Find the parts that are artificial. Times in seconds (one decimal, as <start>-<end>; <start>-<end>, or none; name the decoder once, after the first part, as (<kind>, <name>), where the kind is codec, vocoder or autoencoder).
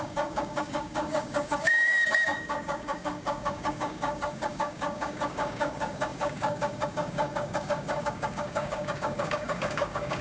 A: 0.0-10.2 (codec, DAC)